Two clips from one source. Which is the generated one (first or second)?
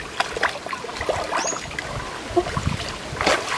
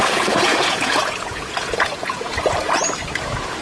second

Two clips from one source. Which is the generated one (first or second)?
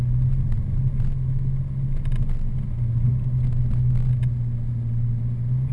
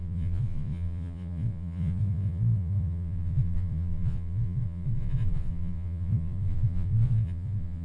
second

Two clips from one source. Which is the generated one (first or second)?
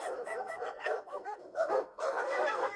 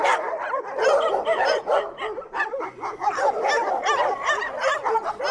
first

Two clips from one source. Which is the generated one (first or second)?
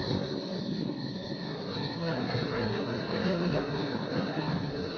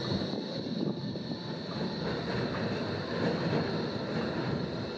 first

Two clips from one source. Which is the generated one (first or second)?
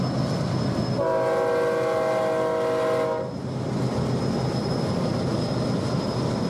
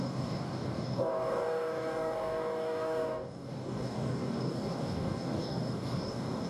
second